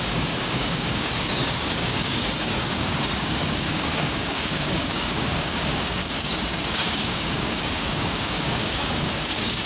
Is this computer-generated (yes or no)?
yes